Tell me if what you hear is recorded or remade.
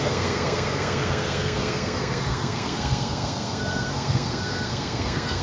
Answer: remade